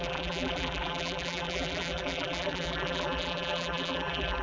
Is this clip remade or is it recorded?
remade